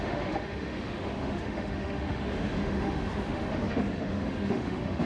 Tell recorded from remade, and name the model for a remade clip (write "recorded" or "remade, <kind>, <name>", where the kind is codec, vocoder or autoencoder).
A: remade, autoencoder, DAC-VAE